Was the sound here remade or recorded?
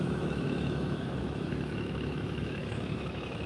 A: remade